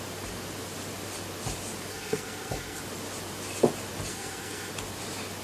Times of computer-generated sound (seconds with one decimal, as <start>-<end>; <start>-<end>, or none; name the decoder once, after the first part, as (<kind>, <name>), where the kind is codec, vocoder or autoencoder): 1.9-2.8 (codec, SNAC); 4.1-4.7